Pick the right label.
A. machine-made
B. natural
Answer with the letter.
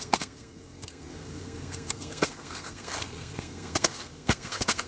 A